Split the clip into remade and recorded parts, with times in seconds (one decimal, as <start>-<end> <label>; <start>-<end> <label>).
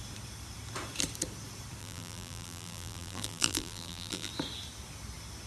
0.0-1.8 recorded; 1.8-4.3 remade; 4.3-5.5 recorded